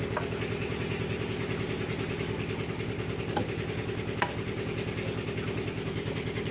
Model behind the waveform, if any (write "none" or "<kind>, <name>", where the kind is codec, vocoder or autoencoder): none